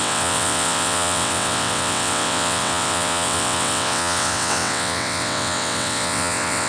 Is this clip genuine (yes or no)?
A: no